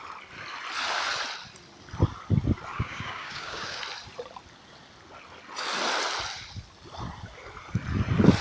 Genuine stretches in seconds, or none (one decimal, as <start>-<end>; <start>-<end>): 0.0-2.7; 3.8-8.4